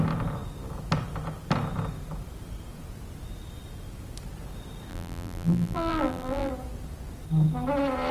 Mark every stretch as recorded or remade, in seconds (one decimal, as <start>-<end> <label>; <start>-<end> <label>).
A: 0.0-4.9 recorded; 4.9-6.5 remade; 6.5-8.1 recorded